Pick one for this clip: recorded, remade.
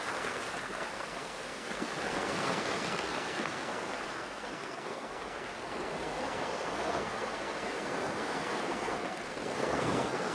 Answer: remade